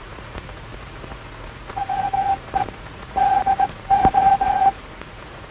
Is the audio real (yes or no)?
no